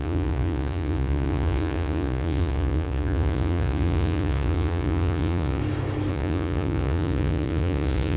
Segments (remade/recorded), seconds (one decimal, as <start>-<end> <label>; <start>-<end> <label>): 0.0-5.6 remade; 5.6-6.1 recorded; 6.1-8.2 remade